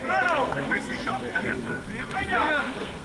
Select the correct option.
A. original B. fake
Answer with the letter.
B